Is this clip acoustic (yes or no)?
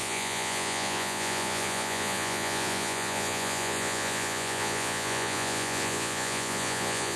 no